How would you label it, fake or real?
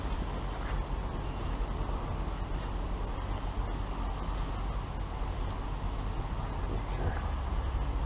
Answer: real